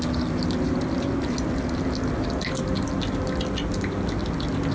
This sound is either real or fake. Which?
real